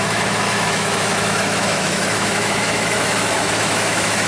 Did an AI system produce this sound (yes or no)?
yes